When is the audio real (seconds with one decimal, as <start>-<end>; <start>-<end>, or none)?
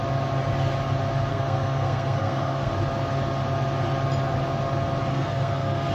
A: 0.0-1.3; 2.7-5.1